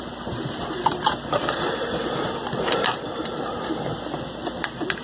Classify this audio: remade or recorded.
remade